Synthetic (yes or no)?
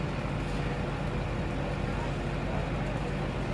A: no